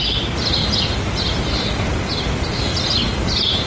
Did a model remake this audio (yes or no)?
no